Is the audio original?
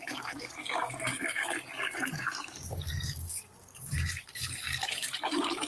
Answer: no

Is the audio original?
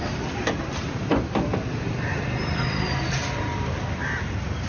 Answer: yes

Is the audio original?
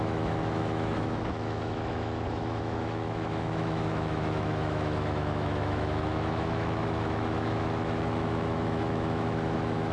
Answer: no